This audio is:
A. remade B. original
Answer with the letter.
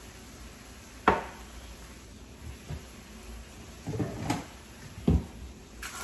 B